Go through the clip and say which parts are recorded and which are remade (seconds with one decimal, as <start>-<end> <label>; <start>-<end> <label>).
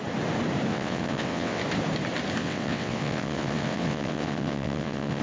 0.0-0.7 recorded; 0.7-1.6 remade; 1.6-2.4 recorded; 2.4-5.2 remade